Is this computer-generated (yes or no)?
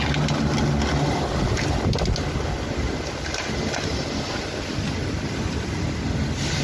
no